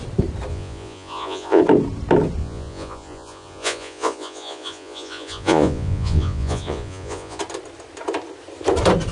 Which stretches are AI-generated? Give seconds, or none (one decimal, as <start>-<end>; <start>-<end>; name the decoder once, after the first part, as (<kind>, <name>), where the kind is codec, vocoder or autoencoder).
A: 0.5-1.6 (vocoder, Vocos); 2.4-7.4

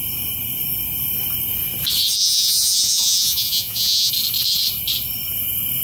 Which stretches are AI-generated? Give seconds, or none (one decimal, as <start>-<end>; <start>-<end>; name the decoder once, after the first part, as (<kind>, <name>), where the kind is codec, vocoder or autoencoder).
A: 2.2-4.1 (vocoder, Vocos)

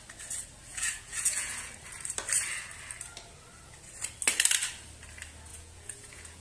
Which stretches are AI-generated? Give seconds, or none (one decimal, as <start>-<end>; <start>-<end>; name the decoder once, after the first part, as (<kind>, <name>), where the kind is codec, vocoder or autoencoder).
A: 0.7-1.7 (vocoder, Vocos); 5.5-6.4